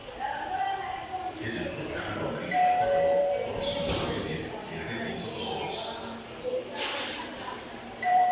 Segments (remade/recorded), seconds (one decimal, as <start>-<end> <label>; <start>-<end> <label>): 0.0-3.2 recorded; 3.2-4.6 remade; 4.6-6.5 recorded; 6.5-8.3 remade